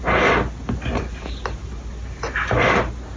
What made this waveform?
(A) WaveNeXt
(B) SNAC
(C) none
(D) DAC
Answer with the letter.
C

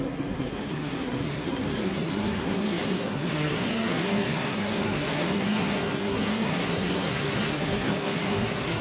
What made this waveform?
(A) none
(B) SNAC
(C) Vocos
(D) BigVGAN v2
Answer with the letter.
B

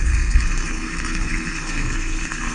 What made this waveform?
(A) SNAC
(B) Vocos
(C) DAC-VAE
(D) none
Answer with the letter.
A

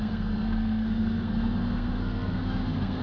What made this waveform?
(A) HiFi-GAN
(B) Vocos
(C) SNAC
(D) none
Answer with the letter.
C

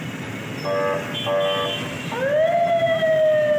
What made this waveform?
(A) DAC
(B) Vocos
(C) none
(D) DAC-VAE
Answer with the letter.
C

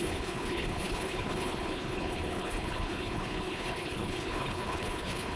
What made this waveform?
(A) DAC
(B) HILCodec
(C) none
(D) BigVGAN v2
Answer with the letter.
B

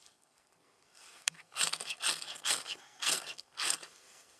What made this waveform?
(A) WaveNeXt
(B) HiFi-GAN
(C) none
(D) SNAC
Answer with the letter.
D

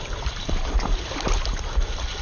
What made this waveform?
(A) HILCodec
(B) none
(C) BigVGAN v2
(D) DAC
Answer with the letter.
C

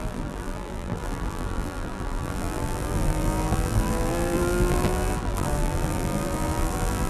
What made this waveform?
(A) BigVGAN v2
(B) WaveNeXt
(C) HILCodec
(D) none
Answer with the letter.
A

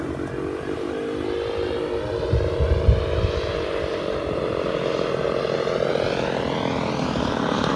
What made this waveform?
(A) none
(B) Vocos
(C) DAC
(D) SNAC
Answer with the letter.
A